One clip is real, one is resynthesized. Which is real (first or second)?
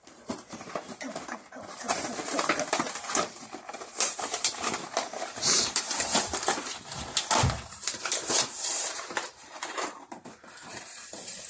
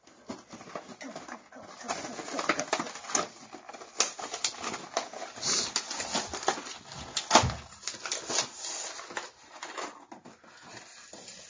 second